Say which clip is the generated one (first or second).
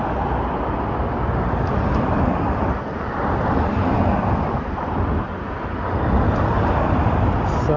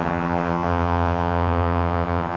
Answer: second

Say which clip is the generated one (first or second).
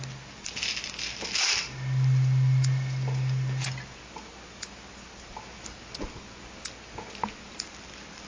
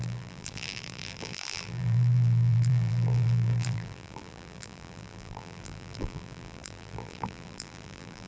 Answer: second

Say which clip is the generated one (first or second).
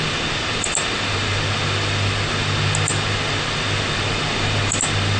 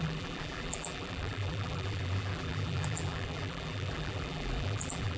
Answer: second